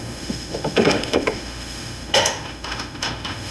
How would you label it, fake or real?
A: fake